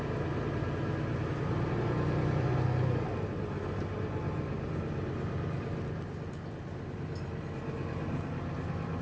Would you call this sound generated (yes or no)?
no